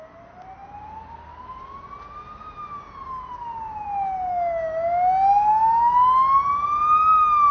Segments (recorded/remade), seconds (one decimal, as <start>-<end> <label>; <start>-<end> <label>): 0.0-7.5 recorded